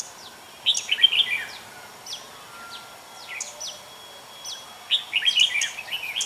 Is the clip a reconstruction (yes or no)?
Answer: no